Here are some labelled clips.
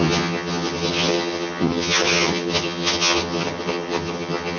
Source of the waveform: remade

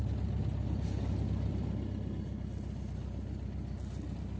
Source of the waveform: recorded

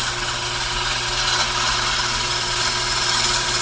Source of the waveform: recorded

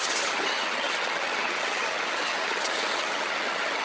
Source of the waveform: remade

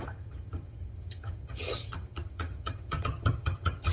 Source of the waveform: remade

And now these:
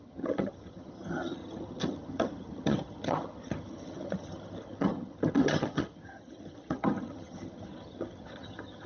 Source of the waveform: remade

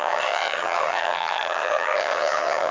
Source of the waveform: remade